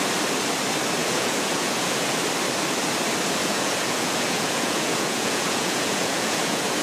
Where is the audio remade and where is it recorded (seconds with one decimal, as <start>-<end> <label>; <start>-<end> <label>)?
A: 0.0-1.0 recorded; 1.0-2.2 remade; 2.2-3.4 recorded; 3.4-6.8 remade

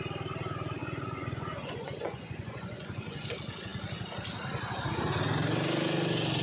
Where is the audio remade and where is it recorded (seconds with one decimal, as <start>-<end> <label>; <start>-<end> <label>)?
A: 0.0-0.8 recorded; 0.8-3.3 remade; 3.3-6.4 recorded

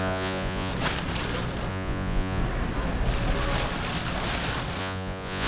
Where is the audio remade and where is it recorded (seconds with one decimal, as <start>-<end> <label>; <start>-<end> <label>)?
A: 0.0-0.7 remade; 0.7-1.7 recorded; 1.7-2.4 remade; 2.4-4.8 recorded; 4.8-5.5 remade

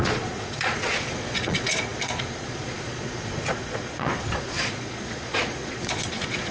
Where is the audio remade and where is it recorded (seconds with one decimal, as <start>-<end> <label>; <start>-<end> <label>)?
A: 0.0-6.5 remade

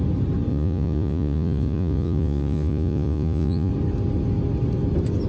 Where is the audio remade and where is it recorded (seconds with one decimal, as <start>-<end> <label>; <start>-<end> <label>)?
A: 0.0-0.5 recorded; 0.5-3.7 remade; 3.7-5.3 recorded

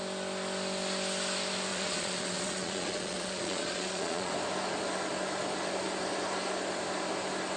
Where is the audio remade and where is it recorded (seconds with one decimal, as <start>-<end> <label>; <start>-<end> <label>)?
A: 0.0-1.7 recorded; 1.7-4.3 remade; 4.3-7.6 recorded